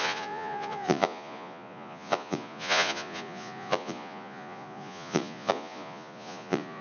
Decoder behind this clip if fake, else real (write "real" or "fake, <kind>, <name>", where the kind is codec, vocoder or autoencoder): fake, vocoder, Vocos